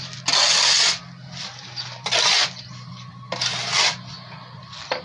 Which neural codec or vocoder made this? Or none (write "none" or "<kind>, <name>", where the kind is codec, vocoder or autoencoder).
none